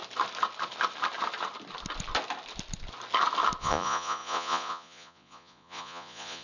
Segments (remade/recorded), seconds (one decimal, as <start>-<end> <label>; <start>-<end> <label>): 0.0-3.6 recorded; 3.6-6.4 remade